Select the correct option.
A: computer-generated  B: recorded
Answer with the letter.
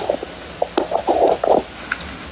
B